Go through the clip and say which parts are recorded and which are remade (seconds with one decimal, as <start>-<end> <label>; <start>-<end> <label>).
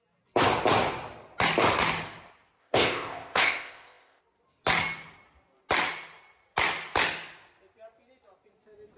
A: 0.0-2.6 recorded; 2.6-4.2 remade; 4.2-9.0 recorded